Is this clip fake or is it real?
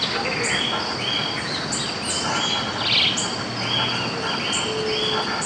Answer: real